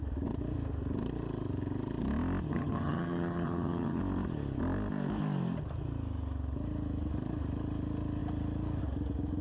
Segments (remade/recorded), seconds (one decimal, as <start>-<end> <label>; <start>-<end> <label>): 0.0-2.5 recorded; 2.5-4.0 remade; 4.0-9.4 recorded